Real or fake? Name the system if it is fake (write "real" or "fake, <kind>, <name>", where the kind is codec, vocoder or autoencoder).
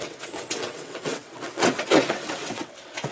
fake, vocoder, WaveNeXt